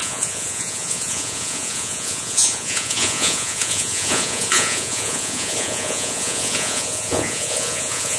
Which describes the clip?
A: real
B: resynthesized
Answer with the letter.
B